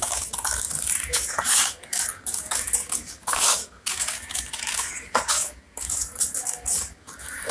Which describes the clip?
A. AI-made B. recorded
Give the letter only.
A